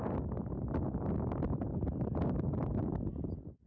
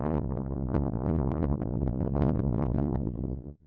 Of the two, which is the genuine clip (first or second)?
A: first